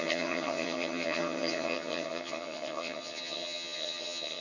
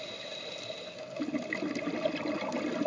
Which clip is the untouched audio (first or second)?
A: second